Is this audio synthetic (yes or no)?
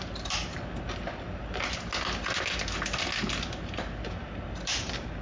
no